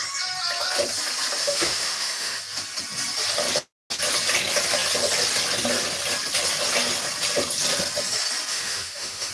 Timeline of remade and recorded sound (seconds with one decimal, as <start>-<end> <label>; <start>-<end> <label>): 0.0-1.4 recorded; 1.4-2.4 remade; 2.4-8.5 recorded; 8.5-9.3 remade